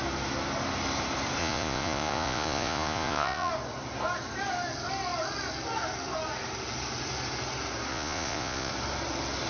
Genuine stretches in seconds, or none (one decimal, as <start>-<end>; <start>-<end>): 0.0-1.4; 3.5-7.9; 8.7-9.5